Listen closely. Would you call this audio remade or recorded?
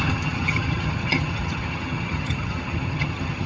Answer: remade